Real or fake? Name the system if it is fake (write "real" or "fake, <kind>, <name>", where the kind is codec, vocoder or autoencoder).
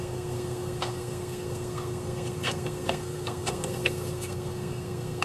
fake, codec, SNAC